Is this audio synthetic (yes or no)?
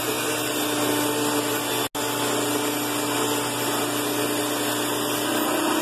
no